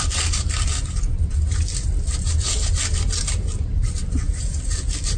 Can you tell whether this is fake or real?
real